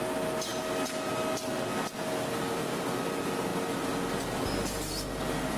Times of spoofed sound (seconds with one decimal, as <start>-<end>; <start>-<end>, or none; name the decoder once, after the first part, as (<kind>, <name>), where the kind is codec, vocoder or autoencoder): none